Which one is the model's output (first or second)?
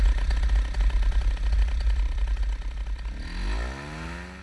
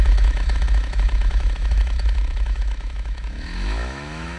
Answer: second